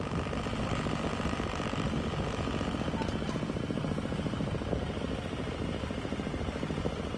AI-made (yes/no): no